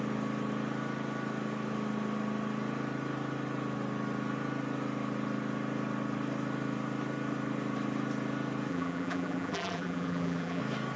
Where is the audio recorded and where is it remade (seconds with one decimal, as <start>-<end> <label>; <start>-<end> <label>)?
0.0-8.7 recorded; 8.7-10.6 remade; 10.6-11.0 recorded